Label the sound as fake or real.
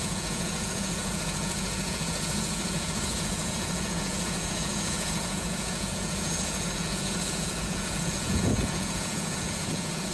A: fake